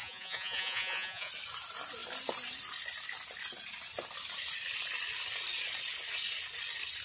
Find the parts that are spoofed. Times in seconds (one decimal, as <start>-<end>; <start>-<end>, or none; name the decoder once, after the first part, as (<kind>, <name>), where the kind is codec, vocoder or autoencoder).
0.0-1.3 (vocoder, Vocos)